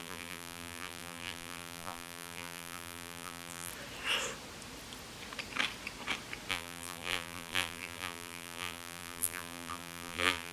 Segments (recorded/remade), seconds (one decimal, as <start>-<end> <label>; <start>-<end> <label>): 0.0-3.7 remade; 3.7-6.5 recorded; 6.5-10.5 remade